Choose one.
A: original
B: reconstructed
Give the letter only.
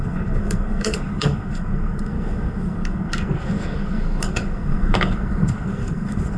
B